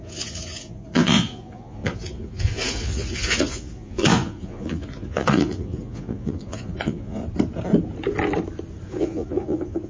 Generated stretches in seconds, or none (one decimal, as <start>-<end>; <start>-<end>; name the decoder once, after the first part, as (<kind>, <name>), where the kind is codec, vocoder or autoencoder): 0.0-7.2 (vocoder, Vocos); 8.9-9.9